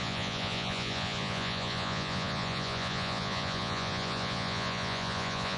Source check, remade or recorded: remade